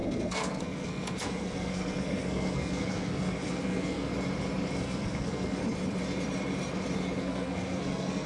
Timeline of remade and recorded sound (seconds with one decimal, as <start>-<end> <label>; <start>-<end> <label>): 0.0-4.1 remade; 4.1-4.8 recorded; 4.8-5.6 remade; 5.6-7.2 recorded; 7.2-8.3 remade